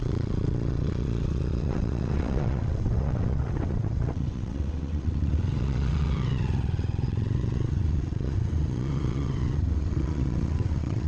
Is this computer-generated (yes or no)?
yes